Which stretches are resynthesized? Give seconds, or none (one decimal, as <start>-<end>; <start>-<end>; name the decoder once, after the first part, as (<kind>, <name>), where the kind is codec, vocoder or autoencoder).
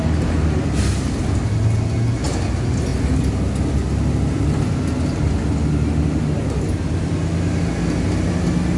none